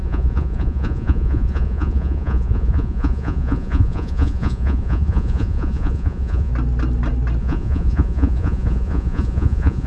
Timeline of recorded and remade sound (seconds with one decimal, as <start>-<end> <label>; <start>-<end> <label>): 0.0-6.5 remade; 6.5-7.4 recorded; 7.4-9.9 remade